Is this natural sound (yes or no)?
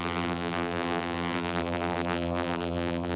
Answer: no